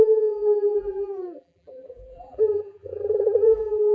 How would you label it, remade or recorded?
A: remade